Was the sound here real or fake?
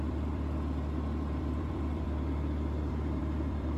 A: fake